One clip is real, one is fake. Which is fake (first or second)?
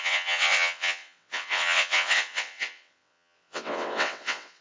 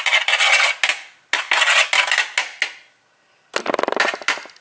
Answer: first